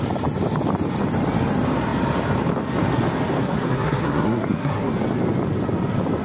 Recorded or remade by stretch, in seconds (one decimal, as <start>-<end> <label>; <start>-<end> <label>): 0.0-3.4 recorded; 3.4-4.9 remade; 4.9-6.2 recorded